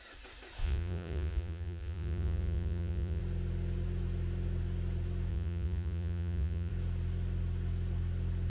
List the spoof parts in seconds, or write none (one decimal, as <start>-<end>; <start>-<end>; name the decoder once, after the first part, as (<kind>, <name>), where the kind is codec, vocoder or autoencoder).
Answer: 0.6-3.2 (vocoder, Vocos); 5.3-6.7